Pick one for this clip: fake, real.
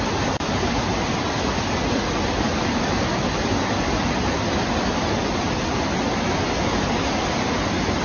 real